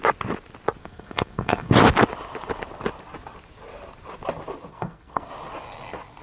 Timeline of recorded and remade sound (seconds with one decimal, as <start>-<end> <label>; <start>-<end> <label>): 0.0-0.8 recorded; 0.8-1.7 remade; 1.7-4.7 recorded; 4.7-5.3 remade; 5.3-6.2 recorded